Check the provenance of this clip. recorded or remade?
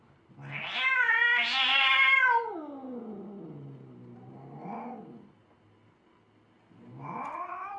recorded